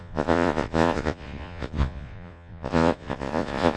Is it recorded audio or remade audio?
remade